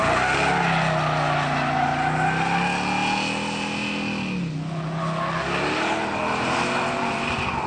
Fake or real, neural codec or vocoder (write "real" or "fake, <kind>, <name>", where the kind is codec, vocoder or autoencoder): real